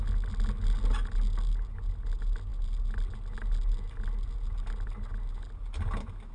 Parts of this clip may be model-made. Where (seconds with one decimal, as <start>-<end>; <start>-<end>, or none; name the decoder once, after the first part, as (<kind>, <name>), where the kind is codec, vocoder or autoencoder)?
none